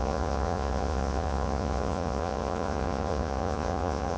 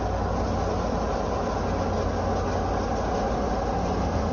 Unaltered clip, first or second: second